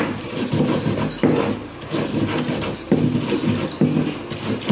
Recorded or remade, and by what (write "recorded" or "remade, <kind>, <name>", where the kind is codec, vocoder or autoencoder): recorded